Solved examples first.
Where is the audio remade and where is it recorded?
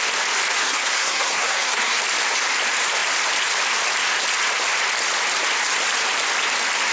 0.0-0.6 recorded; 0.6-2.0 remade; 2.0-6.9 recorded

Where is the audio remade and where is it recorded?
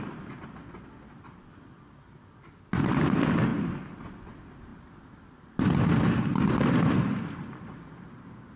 0.0-8.6 recorded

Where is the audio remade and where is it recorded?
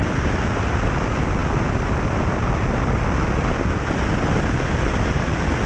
0.0-5.7 recorded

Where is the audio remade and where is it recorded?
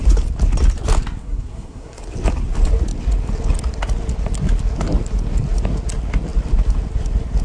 0.0-1.2 recorded; 1.2-2.0 remade; 2.0-7.4 recorded